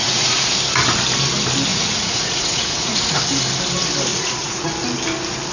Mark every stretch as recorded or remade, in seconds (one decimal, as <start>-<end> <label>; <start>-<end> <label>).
0.0-0.5 remade; 0.5-1.7 recorded; 1.7-3.2 remade; 3.2-4.1 recorded; 4.1-4.7 remade; 4.7-5.5 recorded